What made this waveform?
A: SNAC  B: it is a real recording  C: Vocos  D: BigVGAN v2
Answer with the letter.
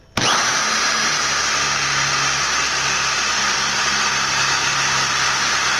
B